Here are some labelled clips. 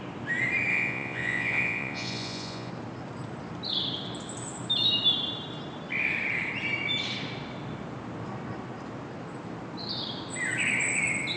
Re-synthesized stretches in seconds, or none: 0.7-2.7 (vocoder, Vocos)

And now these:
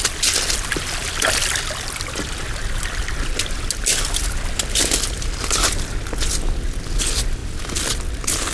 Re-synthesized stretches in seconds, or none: none

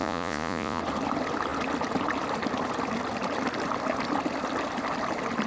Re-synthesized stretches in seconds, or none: 0.0-0.8 (vocoder, Vocos)

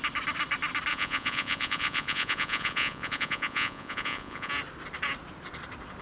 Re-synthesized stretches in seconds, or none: 0.9-4.5 (vocoder, Vocos)

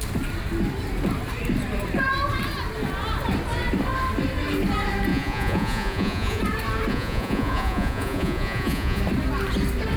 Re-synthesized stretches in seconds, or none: 5.1-6.4 (vocoder, Vocos); 6.9-9.0

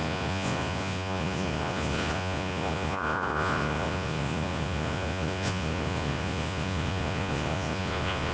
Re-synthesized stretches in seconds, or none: 0.0-8.3 (vocoder, Vocos)

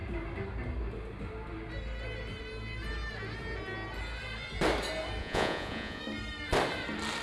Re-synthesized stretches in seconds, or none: 5.2-6.0 (vocoder, Vocos)